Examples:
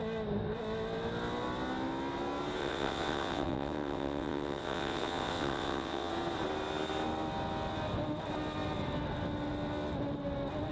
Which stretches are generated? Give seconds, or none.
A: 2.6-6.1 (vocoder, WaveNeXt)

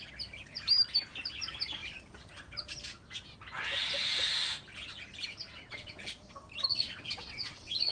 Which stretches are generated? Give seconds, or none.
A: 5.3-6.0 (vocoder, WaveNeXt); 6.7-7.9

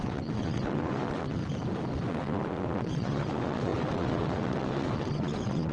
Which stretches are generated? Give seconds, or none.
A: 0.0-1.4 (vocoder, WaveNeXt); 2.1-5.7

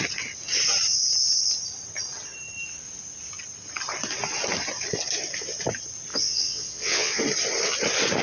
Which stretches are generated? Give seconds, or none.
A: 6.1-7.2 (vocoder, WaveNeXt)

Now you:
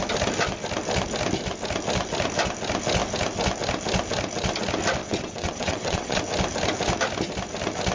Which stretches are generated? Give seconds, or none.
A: 5.0-6.2 (vocoder, WaveNeXt)